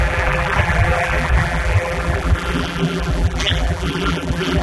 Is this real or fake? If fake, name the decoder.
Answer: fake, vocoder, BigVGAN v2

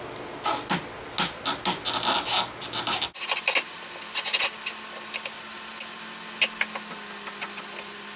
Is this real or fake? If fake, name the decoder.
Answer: real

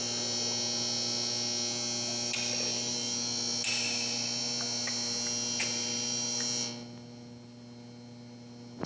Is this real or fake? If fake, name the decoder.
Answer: real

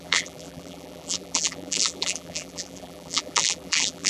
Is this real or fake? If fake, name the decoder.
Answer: fake, vocoder, BigVGAN v2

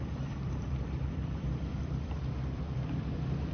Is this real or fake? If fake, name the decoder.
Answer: fake, vocoder, BigVGAN v2